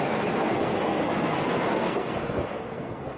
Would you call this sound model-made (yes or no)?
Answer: yes